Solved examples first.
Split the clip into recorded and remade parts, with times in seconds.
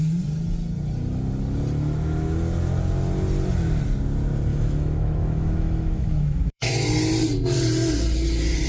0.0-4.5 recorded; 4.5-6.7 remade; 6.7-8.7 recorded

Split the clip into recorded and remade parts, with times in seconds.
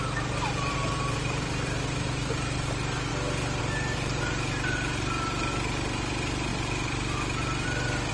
0.0-3.1 remade; 3.1-3.6 recorded; 3.6-8.1 remade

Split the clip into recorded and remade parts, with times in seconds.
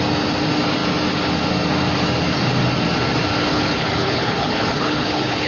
0.0-3.5 recorded; 3.5-5.5 remade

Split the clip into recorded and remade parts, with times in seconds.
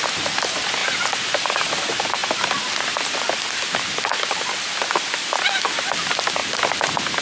0.0-7.2 recorded